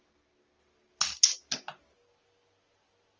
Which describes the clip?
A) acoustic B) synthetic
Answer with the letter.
A